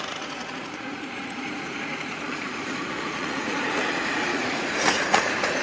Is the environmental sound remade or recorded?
remade